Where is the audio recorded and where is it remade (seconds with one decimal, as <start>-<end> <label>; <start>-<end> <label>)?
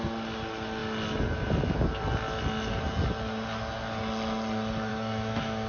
0.0-4.9 recorded; 4.9-5.7 remade